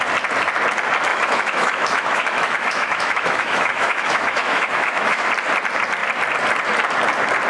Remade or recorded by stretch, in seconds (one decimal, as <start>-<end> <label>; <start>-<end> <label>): 0.0-1.1 recorded; 1.1-5.3 remade; 5.3-7.5 recorded